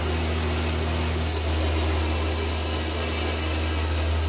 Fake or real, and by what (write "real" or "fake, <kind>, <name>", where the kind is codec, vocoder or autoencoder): real